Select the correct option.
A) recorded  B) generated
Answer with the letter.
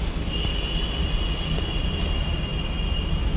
A